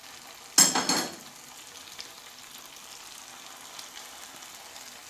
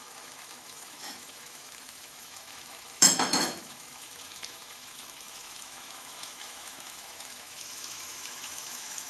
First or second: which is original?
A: first